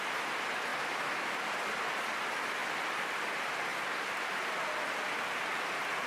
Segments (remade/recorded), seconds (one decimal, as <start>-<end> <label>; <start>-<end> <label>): 0.0-3.7 recorded; 3.7-4.3 remade; 4.3-6.1 recorded